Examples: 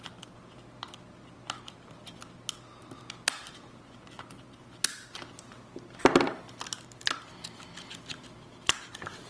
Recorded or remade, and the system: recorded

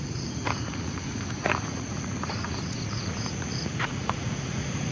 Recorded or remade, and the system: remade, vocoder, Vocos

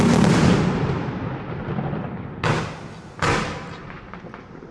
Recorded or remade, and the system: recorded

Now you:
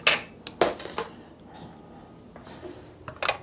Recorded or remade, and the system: recorded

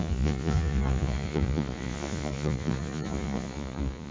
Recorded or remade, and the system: remade, vocoder, Vocos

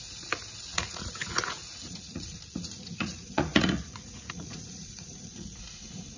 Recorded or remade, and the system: remade, vocoder, Vocos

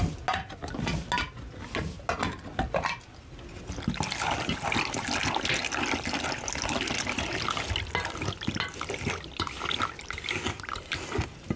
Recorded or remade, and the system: recorded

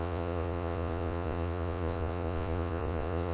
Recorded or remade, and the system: remade, vocoder, Vocos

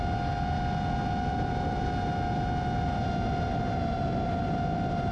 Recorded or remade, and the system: recorded